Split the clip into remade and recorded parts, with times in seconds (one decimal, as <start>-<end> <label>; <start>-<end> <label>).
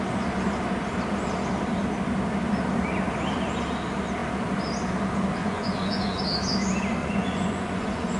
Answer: 0.0-5.4 recorded; 5.4-6.2 remade; 6.2-7.0 recorded; 7.0-8.2 remade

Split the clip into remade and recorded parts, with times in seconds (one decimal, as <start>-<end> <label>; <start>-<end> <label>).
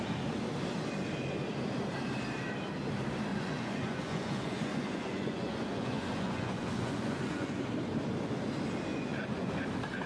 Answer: 0.0-3.3 recorded; 3.3-7.6 remade; 7.6-8.9 recorded; 8.9-9.5 remade; 9.5-10.1 recorded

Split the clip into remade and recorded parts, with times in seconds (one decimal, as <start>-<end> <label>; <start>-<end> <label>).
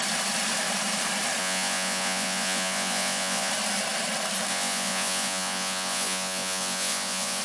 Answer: 0.0-1.4 recorded; 1.4-3.5 remade; 3.5-4.5 recorded; 4.5-7.4 remade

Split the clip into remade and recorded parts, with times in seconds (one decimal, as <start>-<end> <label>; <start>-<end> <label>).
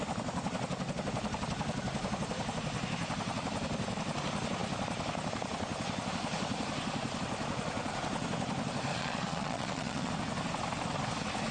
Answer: 0.0-8.9 recorded; 8.9-10.1 remade; 10.1-11.5 recorded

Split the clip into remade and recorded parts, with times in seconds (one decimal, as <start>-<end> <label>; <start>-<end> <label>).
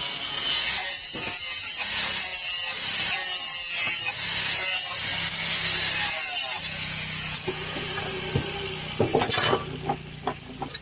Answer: 0.0-2.3 remade; 2.3-4.4 recorded; 4.4-5.1 remade; 5.1-6.6 recorded; 6.6-8.1 remade; 8.1-10.8 recorded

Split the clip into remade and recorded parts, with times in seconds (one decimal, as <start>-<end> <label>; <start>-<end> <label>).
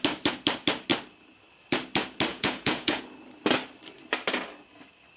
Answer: 0.0-2.3 recorded; 2.3-3.0 remade; 3.0-5.2 recorded